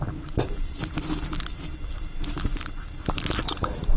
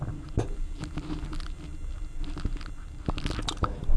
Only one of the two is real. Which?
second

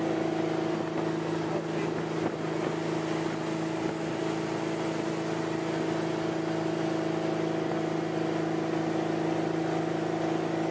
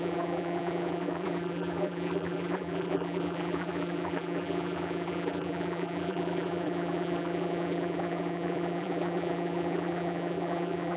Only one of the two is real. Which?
first